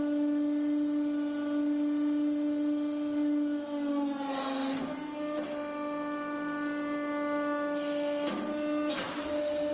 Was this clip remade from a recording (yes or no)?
no